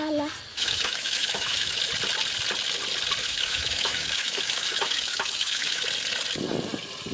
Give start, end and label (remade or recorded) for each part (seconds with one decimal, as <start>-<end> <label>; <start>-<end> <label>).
0.0-0.5 recorded; 0.5-1.8 remade; 1.8-3.2 recorded; 3.2-5.8 remade; 5.8-7.1 recorded